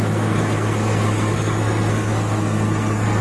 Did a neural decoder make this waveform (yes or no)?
yes